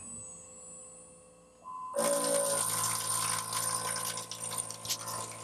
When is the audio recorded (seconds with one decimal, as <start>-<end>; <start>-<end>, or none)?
0.0-5.4